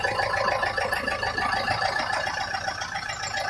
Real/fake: real